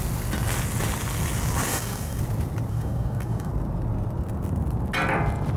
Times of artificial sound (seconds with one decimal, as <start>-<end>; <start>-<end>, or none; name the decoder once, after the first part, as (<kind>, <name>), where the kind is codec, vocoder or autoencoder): 1.7-2.2 (codec, DAC); 2.7-3.5